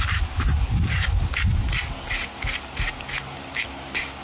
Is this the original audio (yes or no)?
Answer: yes